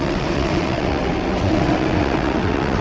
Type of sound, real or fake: fake